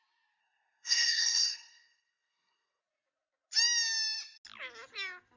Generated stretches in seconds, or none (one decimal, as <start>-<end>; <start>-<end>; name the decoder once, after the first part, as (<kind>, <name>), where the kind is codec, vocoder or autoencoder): 0.4-2.8 (codec, SNAC)